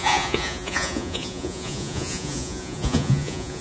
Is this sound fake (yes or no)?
yes